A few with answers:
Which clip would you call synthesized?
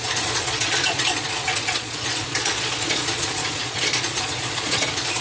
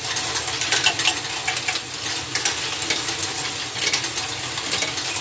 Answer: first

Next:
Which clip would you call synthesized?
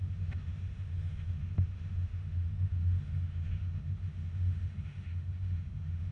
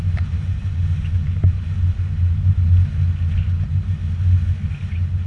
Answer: first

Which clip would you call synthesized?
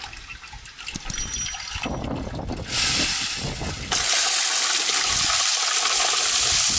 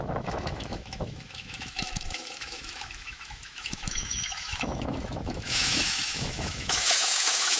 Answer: second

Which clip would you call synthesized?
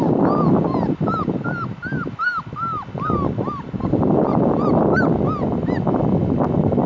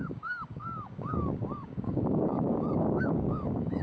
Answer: second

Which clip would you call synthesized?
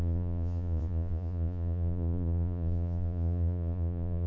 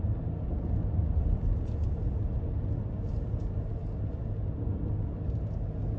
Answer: first